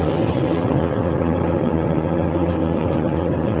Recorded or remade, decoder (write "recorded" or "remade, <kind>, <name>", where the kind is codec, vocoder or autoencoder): remade, vocoder, WaveNeXt